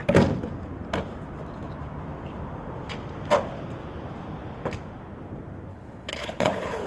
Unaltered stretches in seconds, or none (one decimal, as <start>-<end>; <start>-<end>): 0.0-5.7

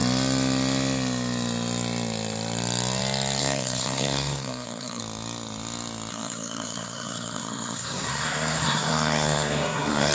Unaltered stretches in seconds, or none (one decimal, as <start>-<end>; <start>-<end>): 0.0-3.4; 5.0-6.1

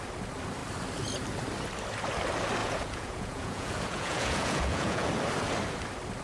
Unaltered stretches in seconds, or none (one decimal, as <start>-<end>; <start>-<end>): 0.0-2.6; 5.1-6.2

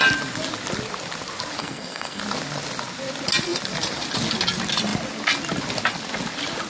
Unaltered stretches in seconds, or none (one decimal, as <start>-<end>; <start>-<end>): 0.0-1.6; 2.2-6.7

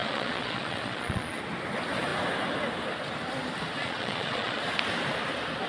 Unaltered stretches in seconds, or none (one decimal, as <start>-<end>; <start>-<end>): 1.4-3.8; 4.6-5.7

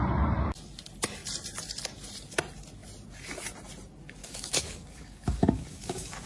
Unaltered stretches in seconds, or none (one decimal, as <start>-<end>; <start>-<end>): 0.0-4.2

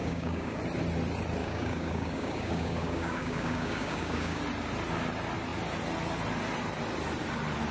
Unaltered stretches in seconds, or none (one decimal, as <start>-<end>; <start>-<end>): 0.6-1.4; 4.4-7.7